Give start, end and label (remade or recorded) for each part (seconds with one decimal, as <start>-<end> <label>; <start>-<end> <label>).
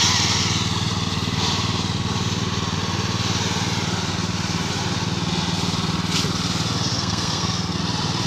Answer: 0.0-6.9 recorded; 6.9-7.8 remade; 7.8-8.3 recorded